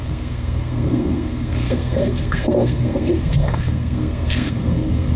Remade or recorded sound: remade